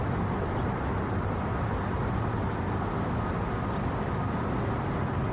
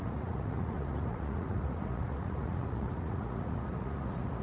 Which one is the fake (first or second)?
second